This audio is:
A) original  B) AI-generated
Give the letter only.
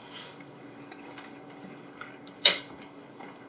B